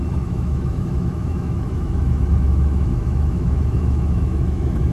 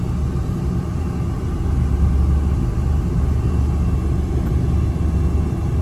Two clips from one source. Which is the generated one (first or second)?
first